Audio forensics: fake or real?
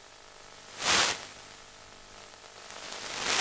real